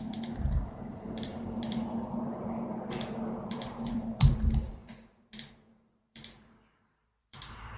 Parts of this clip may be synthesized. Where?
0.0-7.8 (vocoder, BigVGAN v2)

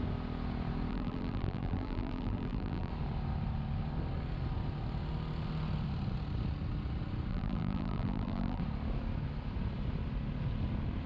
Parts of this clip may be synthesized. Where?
0.9-2.9 (vocoder, BigVGAN v2); 7.3-8.6

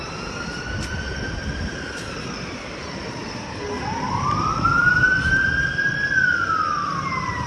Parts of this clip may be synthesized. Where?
none